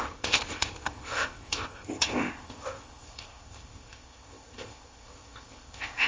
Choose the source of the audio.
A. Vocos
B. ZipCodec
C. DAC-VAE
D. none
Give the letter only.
B